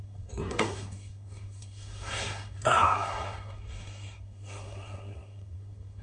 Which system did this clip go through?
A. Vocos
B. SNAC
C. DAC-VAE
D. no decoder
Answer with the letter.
B